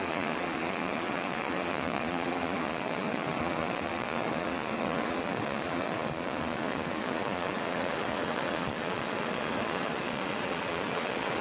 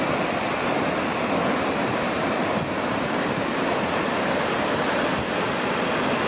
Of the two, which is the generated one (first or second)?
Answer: first